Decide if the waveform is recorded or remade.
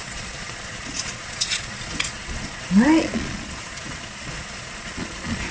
remade